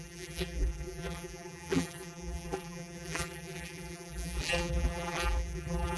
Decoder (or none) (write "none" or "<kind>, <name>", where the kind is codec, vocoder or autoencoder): vocoder, BigVGAN v2